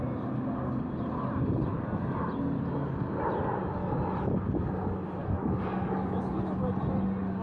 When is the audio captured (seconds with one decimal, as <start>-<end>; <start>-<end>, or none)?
0.0-5.2; 6.4-7.4